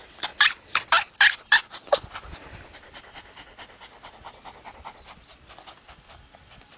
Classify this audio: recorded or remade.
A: recorded